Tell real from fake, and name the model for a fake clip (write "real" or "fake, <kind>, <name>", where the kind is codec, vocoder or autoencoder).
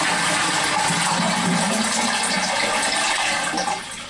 real